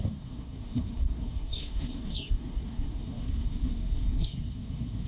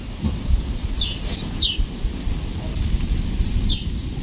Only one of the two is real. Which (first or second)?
second